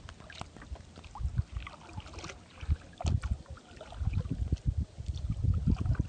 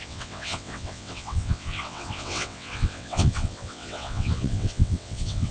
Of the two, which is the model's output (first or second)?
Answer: second